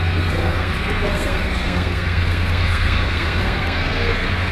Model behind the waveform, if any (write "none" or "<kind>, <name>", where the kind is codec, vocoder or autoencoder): codec, SNAC